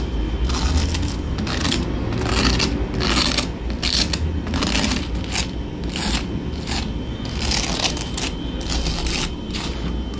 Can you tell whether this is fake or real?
real